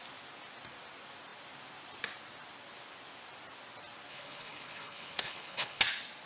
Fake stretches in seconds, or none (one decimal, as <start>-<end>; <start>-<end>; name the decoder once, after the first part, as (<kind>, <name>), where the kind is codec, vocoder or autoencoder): 4.1-5.8 (codec, HILCodec)